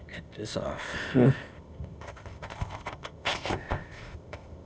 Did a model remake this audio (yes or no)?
yes